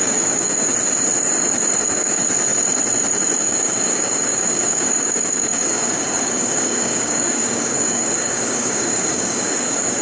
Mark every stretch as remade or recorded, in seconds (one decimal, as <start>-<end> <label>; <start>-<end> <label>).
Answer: 0.0-0.7 remade; 0.7-1.8 recorded; 1.8-2.2 remade; 2.2-3.4 recorded; 3.4-10.0 remade